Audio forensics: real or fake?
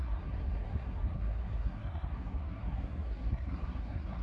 fake